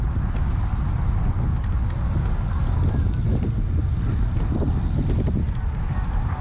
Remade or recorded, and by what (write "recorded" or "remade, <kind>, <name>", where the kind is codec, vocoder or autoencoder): recorded